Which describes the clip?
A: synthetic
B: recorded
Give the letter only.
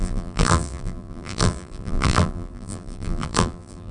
A